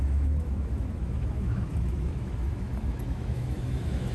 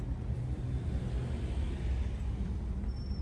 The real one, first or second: second